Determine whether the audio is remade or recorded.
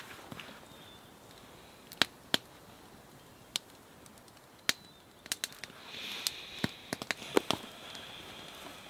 recorded